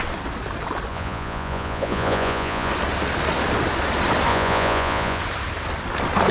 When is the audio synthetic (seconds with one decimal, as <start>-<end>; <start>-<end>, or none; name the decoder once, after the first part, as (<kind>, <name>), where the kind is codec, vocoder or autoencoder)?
0.9-2.7 (vocoder, Vocos); 4.3-5.2

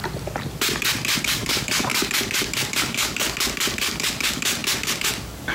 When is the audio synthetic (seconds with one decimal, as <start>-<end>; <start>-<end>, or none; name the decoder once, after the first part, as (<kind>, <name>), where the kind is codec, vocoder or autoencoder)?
1.2-5.5 (codec, DAC)

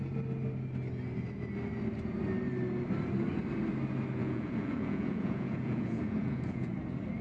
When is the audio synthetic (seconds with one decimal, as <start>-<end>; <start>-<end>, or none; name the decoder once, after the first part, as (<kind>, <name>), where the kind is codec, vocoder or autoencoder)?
4.2-6.7 (vocoder, Vocos)

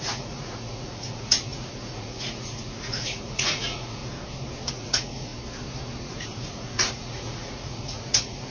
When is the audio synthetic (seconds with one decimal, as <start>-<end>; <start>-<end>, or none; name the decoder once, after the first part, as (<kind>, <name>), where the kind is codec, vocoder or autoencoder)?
0.0-4.0 (vocoder, Vocos); 4.7-5.3; 6.0-8.5

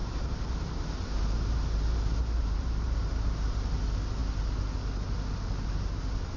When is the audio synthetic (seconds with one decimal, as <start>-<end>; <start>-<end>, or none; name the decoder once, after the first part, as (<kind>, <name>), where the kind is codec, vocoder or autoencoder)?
0.0-3.8 (vocoder, BigVGAN v2)

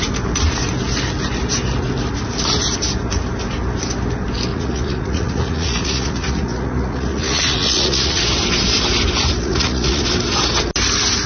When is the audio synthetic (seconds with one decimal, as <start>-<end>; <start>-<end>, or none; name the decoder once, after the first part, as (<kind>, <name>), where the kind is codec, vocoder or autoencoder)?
4.5-8.2 (vocoder, Vocos); 9.4-10.0